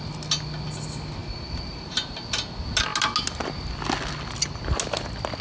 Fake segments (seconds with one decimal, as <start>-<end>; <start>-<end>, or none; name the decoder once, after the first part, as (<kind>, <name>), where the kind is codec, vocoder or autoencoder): 1.2-2.3 (vocoder, BigVGAN v2)